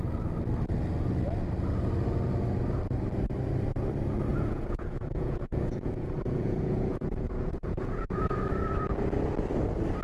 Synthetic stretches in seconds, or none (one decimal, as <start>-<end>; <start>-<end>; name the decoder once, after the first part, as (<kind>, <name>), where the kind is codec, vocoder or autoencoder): 4.3-8.4 (vocoder, Vocos)